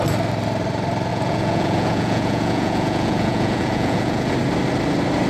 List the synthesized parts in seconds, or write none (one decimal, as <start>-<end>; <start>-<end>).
1.1-4.3